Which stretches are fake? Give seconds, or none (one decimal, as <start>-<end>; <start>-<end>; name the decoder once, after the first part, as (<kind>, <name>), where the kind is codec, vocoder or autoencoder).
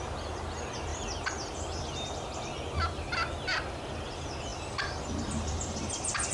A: none